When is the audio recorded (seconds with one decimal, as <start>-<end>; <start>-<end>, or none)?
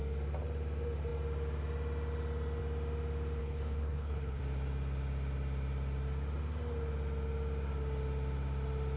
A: 0.0-3.4; 4.4-9.0